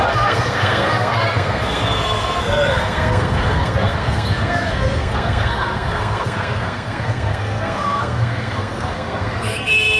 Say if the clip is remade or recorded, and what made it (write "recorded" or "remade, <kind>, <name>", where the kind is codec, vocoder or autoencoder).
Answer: remade, codec, SNAC